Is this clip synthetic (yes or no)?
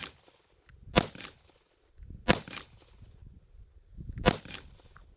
no